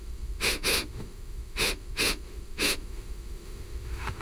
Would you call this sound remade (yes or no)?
yes